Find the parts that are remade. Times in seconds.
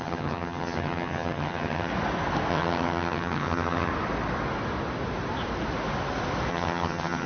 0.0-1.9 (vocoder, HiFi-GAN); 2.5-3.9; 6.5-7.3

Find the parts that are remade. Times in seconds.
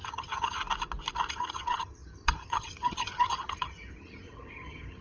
0.0-0.6 (vocoder, HiFi-GAN); 1.3-5.0